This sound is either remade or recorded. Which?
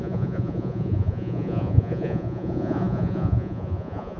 remade